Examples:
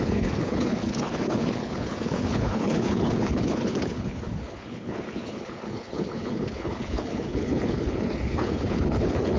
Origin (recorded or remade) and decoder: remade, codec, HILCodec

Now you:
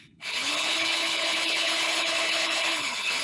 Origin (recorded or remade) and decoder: remade, codec, HILCodec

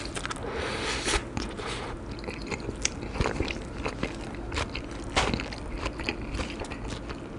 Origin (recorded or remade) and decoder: recorded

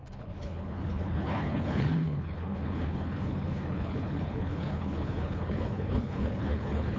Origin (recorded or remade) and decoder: remade, codec, HILCodec